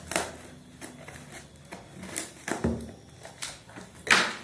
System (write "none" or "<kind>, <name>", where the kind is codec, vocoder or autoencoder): none